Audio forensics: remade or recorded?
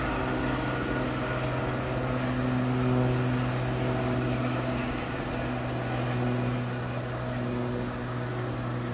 recorded